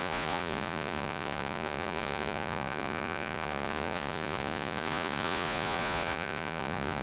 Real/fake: fake